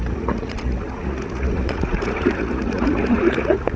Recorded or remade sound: remade